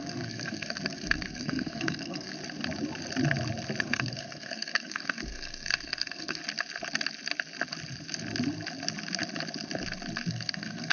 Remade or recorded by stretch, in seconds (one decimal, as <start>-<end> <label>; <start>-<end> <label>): 0.0-2.3 remade; 2.3-3.8 recorded; 3.8-6.4 remade; 6.4-10.3 recorded; 10.3-10.9 remade

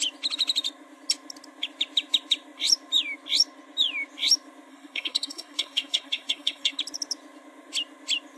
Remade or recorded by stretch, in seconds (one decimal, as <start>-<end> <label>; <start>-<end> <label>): 0.0-4.7 recorded; 4.7-6.8 remade; 6.8-8.4 recorded